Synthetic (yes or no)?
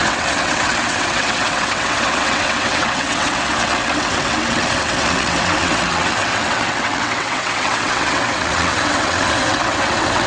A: yes